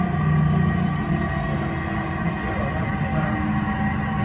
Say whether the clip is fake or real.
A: real